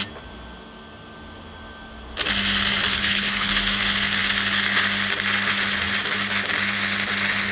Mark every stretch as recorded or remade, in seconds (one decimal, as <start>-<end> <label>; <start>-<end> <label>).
0.0-2.9 recorded; 2.9-3.5 remade; 3.5-7.5 recorded